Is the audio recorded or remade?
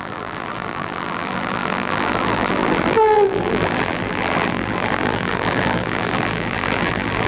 remade